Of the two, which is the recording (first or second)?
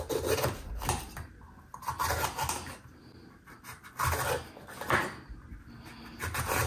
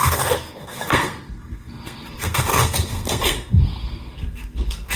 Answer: first